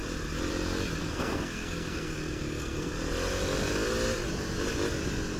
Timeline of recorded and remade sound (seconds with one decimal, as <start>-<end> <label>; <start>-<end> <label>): 0.0-1.0 recorded; 1.0-2.9 remade; 2.9-5.4 recorded